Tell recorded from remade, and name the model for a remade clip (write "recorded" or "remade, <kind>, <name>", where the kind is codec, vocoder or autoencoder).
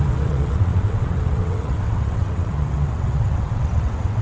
remade, vocoder, WaveNeXt